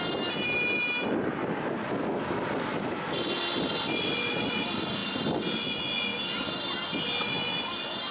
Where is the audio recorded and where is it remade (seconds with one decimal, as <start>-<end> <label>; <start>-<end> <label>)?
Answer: 0.0-8.1 recorded

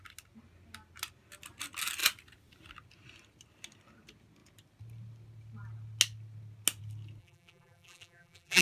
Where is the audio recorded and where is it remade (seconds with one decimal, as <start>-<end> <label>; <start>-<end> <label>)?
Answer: 0.0-7.2 recorded; 7.2-8.6 remade

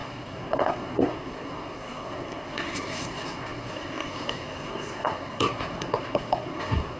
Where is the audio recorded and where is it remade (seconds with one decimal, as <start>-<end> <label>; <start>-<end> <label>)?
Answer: 0.0-7.0 remade

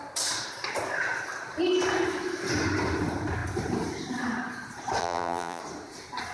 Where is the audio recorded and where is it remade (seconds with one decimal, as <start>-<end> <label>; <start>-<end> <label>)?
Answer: 0.0-5.0 recorded; 5.0-5.6 remade; 5.6-6.3 recorded

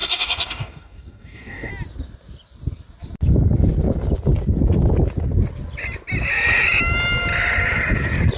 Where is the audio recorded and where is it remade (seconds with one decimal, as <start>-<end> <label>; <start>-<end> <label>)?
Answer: 0.0-1.7 remade; 1.7-8.4 recorded

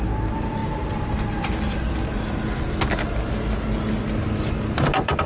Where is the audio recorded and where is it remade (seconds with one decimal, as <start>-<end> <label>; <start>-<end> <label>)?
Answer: 0.0-5.3 recorded